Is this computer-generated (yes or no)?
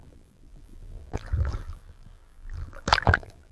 yes